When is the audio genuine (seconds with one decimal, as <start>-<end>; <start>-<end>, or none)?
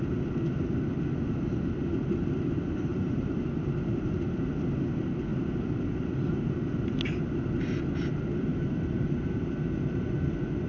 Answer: 0.0-2.9; 3.6-5.3; 6.5-8.5; 10.1-10.7